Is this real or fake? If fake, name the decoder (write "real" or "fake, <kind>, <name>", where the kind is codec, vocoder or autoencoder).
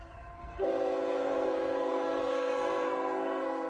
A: fake, codec, SNAC